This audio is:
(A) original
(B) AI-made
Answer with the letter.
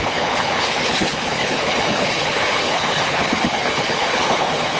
B